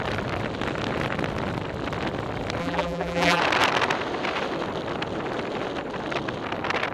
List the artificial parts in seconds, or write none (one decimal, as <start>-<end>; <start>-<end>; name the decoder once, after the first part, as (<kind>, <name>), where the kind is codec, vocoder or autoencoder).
2.6-3.4 (vocoder, BigVGAN v2)